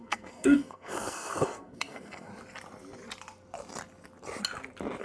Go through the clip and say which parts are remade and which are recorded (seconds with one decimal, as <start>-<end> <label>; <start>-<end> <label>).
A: 0.0-2.3 remade; 2.3-5.0 recorded